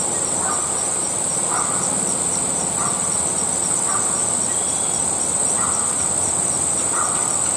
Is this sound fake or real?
real